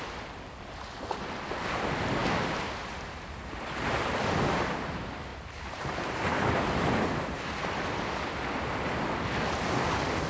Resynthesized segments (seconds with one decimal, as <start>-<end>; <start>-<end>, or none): 5.3-6.2